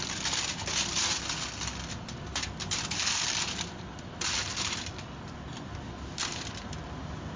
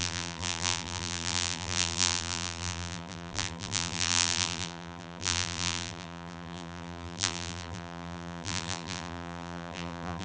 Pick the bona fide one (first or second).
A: first